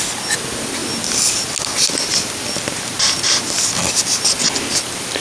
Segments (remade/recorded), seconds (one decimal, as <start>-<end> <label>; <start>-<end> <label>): 0.0-5.2 recorded